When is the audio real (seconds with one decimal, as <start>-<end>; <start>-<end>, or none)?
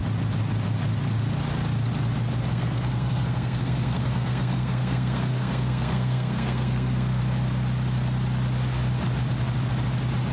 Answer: 0.0-2.5; 7.2-10.3